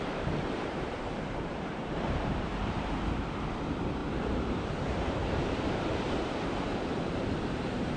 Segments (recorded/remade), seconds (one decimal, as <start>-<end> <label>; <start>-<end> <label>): 0.0-6.7 remade; 6.7-7.3 recorded; 7.3-8.0 remade